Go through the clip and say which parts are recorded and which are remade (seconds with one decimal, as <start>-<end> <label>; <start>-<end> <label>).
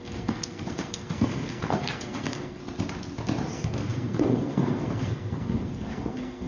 0.0-2.6 remade; 2.6-3.5 recorded; 3.5-6.5 remade